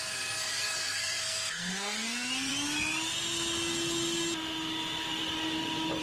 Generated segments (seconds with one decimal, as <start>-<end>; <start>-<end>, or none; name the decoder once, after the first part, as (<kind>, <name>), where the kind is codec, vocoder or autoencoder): 0.0-2.5 (codec, SNAC)